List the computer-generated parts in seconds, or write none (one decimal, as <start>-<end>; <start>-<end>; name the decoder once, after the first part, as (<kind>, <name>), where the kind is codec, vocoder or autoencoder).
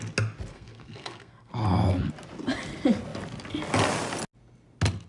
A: 0.5-1.5 (codec, SNAC)